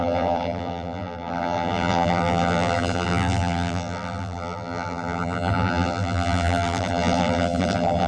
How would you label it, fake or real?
fake